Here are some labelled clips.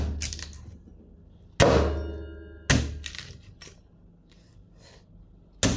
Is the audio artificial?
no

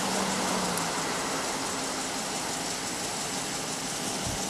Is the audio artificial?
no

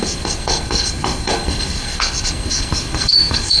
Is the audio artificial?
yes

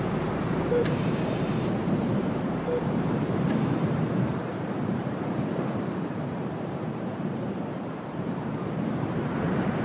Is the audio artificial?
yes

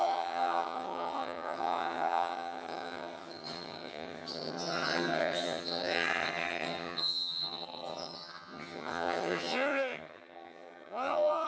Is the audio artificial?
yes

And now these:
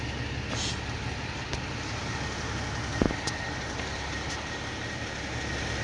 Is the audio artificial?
no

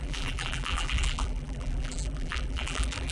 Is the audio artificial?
yes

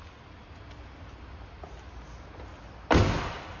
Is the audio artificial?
no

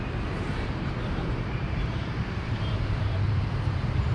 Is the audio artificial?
yes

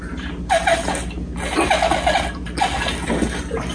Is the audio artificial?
no